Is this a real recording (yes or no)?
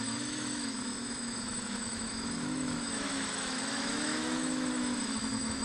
no